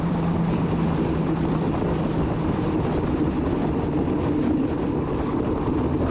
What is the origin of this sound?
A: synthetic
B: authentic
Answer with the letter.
B